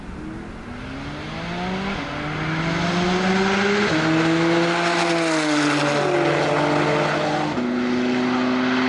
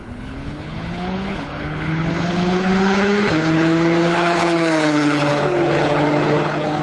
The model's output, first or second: second